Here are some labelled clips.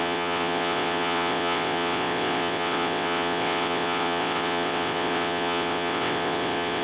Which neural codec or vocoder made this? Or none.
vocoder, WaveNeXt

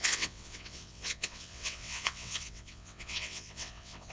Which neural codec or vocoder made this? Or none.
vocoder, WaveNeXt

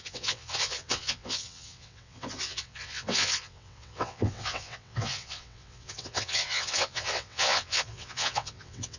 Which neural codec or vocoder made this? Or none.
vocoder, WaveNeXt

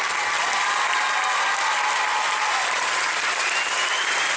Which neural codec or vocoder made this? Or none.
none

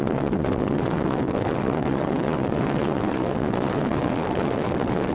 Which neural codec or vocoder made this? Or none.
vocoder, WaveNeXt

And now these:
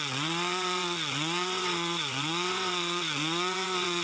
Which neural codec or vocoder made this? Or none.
vocoder, WaveNeXt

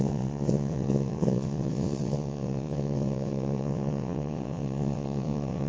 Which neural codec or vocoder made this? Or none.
vocoder, WaveNeXt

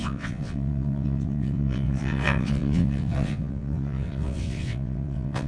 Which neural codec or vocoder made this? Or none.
vocoder, WaveNeXt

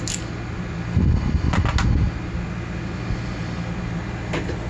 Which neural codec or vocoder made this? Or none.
none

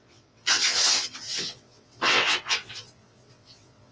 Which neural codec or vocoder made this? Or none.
vocoder, WaveNeXt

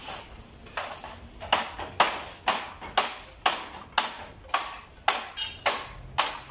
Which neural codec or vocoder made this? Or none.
none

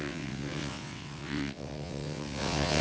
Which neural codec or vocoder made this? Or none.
vocoder, WaveNeXt